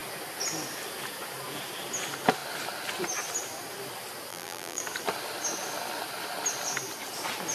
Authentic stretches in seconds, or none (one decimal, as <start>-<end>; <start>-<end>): 0.0-4.3; 4.8-7.5